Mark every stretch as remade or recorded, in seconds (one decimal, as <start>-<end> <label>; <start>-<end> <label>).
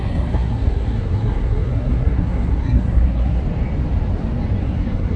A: 0.0-3.4 remade; 3.4-4.6 recorded; 4.6-5.2 remade